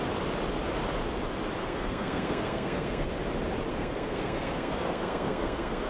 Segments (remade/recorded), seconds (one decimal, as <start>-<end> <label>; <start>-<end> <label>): 0.0-1.6 recorded; 1.6-3.1 remade; 3.1-3.7 recorded; 3.7-5.9 remade